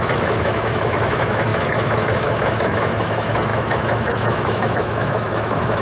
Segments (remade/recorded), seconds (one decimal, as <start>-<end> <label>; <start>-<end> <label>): 0.0-5.8 remade